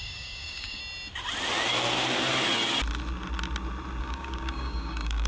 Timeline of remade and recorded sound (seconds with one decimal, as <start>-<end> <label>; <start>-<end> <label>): 0.0-0.8 remade; 0.8-4.0 recorded; 4.0-5.3 remade